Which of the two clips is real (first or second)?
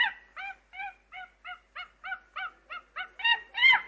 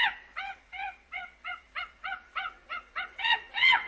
first